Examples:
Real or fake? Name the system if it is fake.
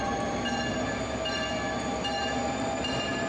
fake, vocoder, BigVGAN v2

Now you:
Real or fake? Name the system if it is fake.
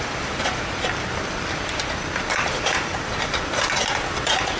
fake, vocoder, BigVGAN v2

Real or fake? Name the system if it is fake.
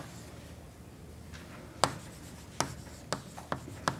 real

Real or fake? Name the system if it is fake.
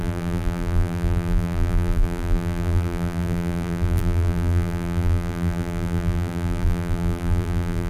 fake, vocoder, BigVGAN v2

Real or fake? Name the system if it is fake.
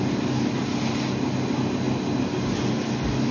real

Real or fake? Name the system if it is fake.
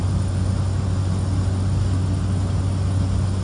real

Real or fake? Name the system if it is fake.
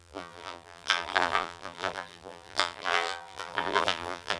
fake, vocoder, BigVGAN v2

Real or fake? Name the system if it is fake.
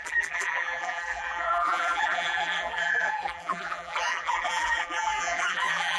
fake, vocoder, BigVGAN v2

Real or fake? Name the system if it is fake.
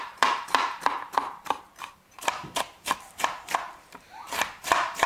fake, vocoder, BigVGAN v2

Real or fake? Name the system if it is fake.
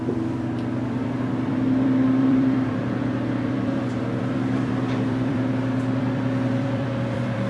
fake, vocoder, BigVGAN v2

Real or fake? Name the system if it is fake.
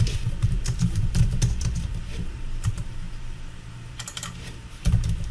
fake, vocoder, BigVGAN v2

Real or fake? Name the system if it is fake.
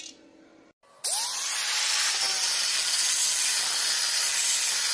real